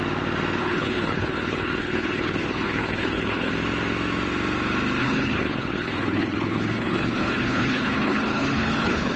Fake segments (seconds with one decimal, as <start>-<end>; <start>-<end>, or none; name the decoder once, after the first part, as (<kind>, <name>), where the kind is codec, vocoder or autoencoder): 0.6-3.5 (codec, HILCodec); 5.0-9.2